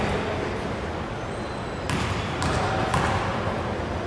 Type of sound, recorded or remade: recorded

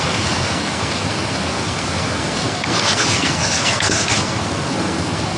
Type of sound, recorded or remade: remade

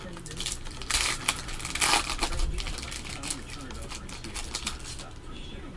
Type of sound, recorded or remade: recorded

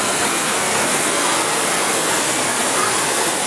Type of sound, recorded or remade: remade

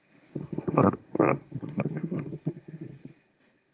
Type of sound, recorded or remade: remade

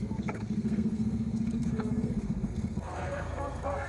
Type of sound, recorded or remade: remade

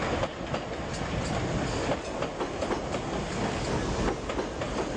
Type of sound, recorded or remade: recorded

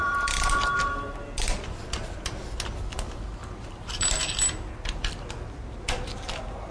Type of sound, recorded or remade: recorded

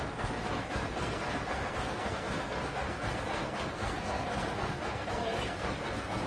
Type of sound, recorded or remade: remade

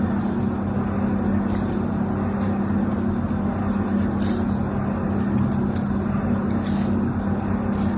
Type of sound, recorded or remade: recorded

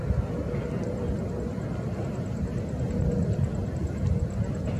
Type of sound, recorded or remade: recorded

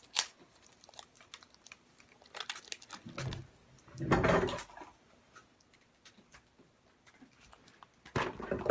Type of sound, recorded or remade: recorded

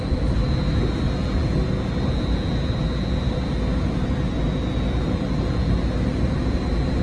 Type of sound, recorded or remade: recorded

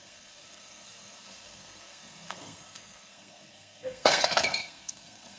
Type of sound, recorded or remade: remade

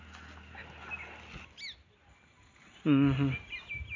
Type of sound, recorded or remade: recorded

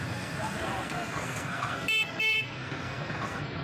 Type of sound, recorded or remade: remade